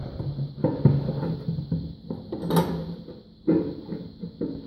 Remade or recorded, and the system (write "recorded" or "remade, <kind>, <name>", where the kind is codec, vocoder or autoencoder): recorded